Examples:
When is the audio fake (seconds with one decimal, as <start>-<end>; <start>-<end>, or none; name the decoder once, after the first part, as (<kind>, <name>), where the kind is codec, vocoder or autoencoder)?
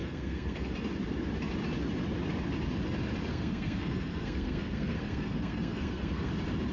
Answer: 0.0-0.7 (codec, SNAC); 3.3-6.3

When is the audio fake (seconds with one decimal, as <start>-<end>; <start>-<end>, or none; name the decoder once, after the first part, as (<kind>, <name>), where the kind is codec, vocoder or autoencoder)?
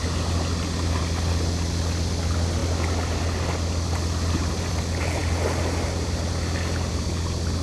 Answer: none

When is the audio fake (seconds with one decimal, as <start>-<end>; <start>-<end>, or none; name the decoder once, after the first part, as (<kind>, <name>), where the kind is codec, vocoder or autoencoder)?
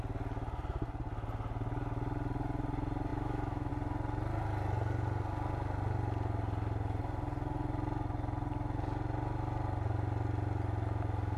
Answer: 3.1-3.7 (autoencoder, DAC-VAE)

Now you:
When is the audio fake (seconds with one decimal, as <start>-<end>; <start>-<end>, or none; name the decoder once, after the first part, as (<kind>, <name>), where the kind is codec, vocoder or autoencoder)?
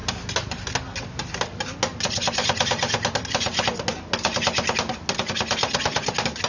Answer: none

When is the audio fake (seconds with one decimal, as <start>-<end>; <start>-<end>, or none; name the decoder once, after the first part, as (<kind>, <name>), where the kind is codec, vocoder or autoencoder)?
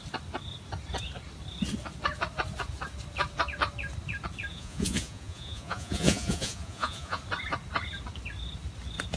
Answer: 4.5-7.2 (vocoder, Vocos)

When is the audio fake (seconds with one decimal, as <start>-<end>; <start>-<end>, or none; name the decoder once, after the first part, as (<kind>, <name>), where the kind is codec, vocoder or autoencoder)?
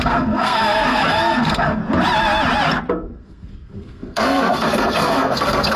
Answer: 0.0-1.8 (codec, SNAC); 2.9-5.8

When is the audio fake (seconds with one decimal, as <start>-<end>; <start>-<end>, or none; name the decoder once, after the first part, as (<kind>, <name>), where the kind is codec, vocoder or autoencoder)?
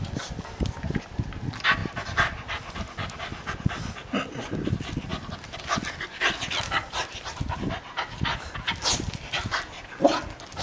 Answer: none